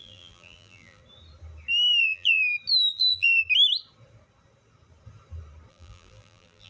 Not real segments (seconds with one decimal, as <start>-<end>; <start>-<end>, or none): 0.0-1.0; 2.0-2.4; 2.9-3.4; 5.7-6.7